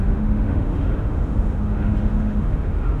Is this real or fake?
fake